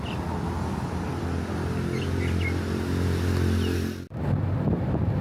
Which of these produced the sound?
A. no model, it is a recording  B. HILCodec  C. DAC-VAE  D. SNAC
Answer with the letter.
A